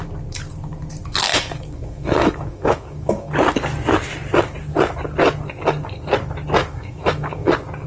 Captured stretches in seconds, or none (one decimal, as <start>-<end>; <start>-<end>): 0.0-1.3; 3.3-6.6; 7.5-7.9